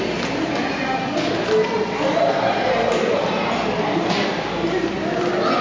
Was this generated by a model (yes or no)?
no